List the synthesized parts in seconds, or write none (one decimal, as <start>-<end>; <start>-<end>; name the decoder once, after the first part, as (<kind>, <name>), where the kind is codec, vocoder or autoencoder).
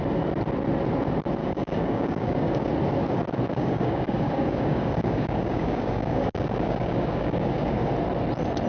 1.4-2.7 (codec, DAC); 3.5-7.9